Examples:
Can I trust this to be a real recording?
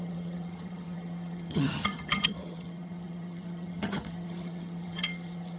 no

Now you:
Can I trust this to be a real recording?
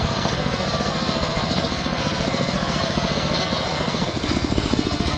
no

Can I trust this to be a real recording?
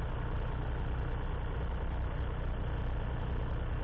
yes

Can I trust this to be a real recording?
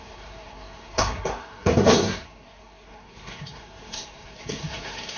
no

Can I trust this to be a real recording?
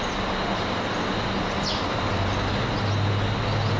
yes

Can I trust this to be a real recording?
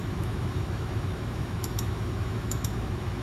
no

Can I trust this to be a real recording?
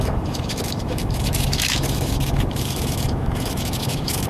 no